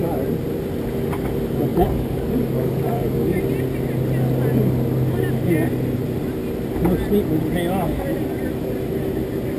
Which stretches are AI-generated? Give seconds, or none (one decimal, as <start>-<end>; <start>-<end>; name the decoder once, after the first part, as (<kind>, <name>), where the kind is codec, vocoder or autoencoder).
1.7-3.4 (codec, DAC)